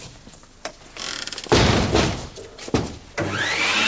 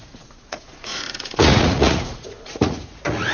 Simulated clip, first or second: second